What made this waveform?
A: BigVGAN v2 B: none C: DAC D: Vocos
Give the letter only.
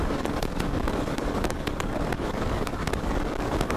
C